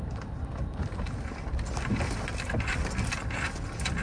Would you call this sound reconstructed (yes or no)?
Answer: no